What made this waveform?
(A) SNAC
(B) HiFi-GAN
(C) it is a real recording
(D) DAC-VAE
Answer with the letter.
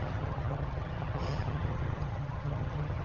B